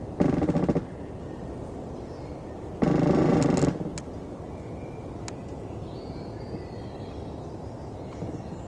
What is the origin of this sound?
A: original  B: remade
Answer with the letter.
A